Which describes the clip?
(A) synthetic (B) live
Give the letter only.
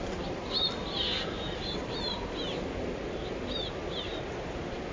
B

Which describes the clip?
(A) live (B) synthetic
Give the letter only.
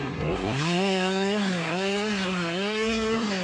B